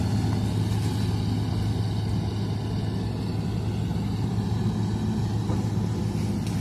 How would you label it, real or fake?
real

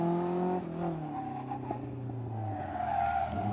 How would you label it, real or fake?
real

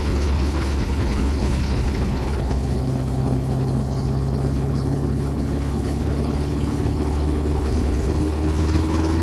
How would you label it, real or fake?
fake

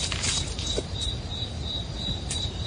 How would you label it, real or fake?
fake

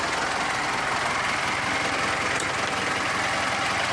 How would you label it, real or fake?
real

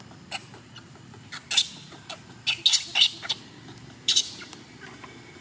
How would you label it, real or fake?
real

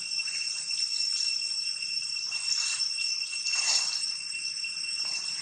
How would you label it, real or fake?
real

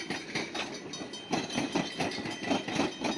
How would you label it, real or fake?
real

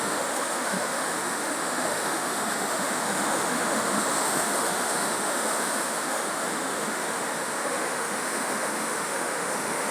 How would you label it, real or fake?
fake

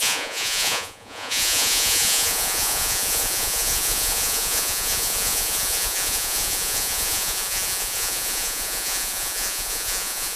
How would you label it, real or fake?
fake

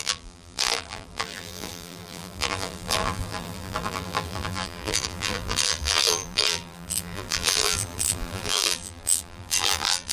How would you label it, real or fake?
fake